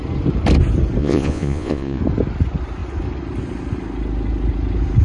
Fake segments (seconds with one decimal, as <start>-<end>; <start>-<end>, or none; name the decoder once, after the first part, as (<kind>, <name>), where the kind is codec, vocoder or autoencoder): 1.0-2.0 (vocoder, Vocos)